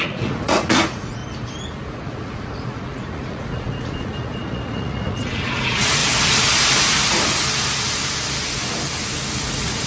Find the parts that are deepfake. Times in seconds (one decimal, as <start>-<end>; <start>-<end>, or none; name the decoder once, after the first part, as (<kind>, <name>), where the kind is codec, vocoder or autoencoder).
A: 0.0-1.2 (vocoder, Vocos); 1.9-6.0; 9.4-9.9